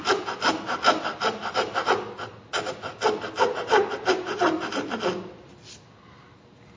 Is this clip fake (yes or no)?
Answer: no